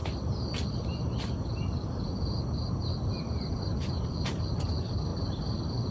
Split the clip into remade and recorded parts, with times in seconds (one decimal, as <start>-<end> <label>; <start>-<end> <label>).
0.0-3.5 recorded; 3.5-5.1 remade; 5.1-5.9 recorded